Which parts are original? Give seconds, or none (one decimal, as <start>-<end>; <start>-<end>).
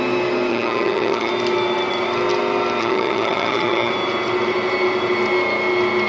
0.0-0.5; 1.3-2.8; 3.9-6.1